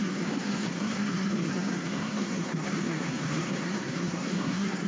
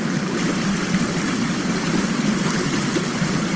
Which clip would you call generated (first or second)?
first